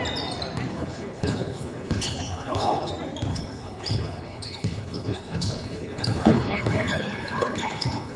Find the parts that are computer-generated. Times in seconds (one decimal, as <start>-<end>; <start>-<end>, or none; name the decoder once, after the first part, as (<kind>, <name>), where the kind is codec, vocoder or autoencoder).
0.7-2.9 (codec, HILCodec); 3.3-8.2